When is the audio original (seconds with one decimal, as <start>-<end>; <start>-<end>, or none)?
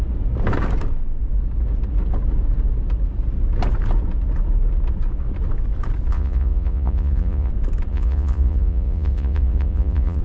0.0-6.1; 7.5-7.9